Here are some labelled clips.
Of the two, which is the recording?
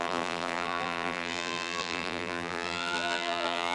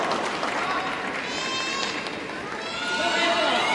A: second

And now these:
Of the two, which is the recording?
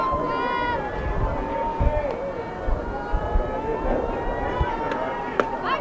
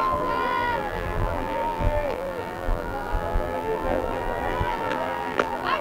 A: first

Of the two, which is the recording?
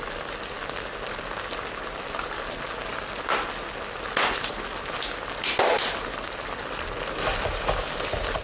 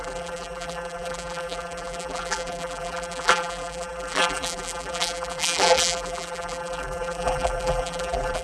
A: first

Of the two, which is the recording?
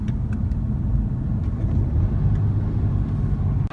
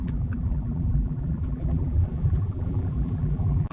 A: first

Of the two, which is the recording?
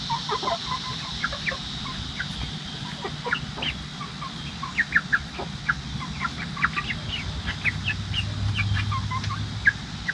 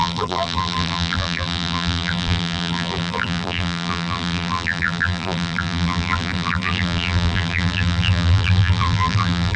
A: first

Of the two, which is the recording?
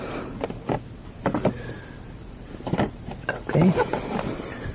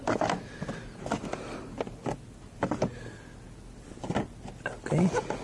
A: second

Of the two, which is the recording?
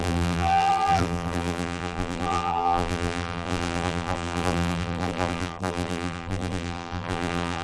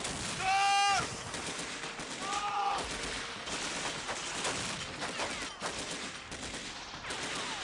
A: second